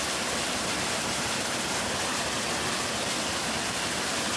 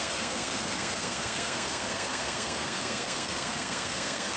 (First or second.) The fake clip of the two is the second